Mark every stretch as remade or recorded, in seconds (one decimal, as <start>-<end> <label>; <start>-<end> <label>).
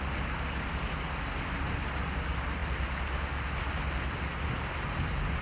0.0-5.4 recorded